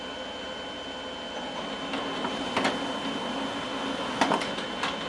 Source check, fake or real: real